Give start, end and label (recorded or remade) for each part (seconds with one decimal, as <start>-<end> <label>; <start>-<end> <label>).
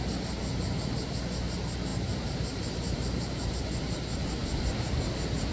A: 0.0-1.9 recorded; 1.9-3.5 remade; 3.5-5.5 recorded